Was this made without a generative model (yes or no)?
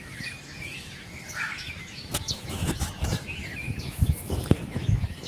no